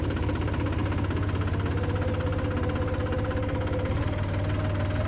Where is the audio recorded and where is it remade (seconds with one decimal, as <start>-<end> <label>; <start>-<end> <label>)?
0.0-5.1 recorded